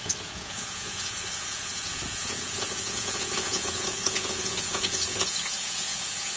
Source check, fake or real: fake